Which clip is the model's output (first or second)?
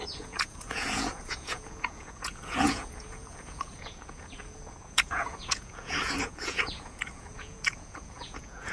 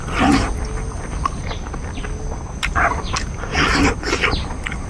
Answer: first